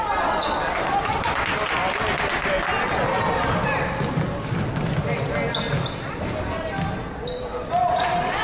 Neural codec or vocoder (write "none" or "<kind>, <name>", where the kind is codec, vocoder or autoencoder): none